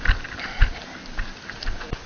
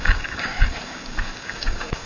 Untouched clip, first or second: first